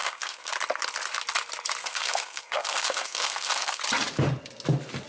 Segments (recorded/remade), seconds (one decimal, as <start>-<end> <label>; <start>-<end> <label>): 0.0-0.5 remade; 0.5-1.8 recorded; 1.8-3.8 remade; 3.8-5.1 recorded